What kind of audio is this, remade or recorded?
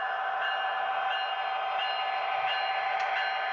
recorded